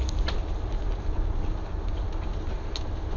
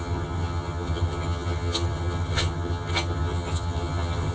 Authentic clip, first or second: first